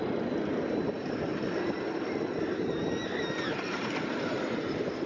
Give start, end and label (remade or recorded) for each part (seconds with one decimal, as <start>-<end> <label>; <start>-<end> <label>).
0.0-5.1 recorded